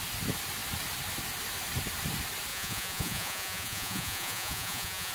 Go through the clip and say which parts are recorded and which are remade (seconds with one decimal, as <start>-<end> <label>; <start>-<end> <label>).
0.0-2.5 recorded; 2.5-5.1 remade